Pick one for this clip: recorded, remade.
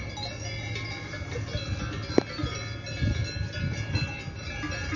recorded